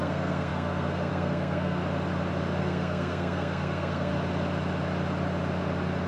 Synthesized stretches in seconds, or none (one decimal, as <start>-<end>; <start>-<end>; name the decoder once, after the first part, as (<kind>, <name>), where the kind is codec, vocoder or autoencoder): 0.0-1.8 (codec, SNAC); 2.6-4.1